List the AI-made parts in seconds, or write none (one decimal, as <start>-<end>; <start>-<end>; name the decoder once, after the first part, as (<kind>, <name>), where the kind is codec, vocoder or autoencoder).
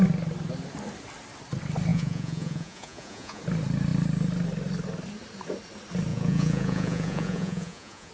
1.9-3.4 (vocoder, Vocos); 6.1-8.1